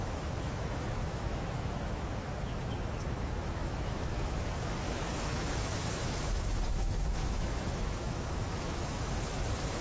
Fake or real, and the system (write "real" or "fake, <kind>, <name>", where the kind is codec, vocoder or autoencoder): fake, autoencoder, DAC-VAE